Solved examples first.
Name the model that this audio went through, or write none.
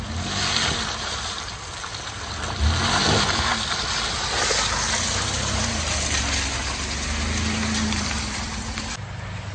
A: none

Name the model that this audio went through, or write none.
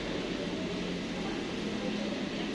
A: none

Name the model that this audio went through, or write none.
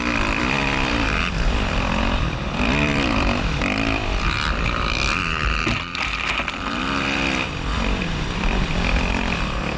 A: vocoder, BigVGAN v2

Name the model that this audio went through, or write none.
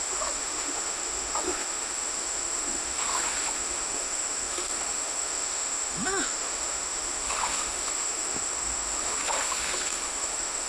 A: autoencoder, DAC-VAE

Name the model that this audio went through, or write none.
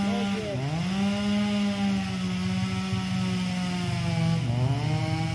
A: none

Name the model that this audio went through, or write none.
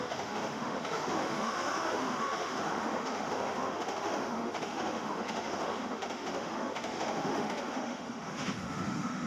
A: autoencoder, DAC-VAE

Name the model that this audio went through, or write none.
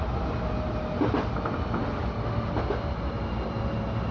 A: none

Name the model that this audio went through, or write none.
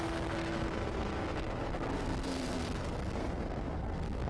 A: codec, SNAC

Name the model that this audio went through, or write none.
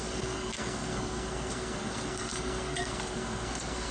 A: codec, SNAC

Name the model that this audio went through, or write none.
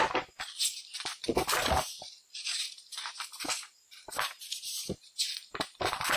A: vocoder, BigVGAN v2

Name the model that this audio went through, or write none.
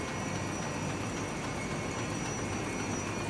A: none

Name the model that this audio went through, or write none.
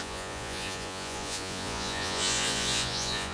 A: vocoder, Vocos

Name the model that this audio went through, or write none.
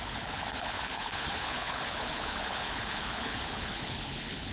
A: codec, HILCodec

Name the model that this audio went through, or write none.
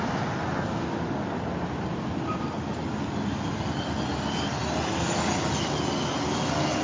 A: none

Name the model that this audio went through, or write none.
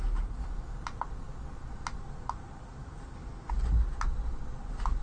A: none